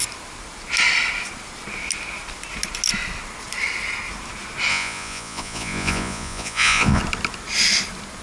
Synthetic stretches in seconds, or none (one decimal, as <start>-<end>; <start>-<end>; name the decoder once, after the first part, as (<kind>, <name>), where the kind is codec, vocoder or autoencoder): 4.7-7.0 (vocoder, Vocos)